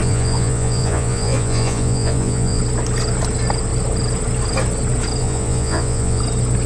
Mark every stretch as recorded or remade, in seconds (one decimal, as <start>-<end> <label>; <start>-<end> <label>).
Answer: 0.0-2.6 remade; 2.6-5.2 recorded; 5.2-6.2 remade; 6.2-6.7 recorded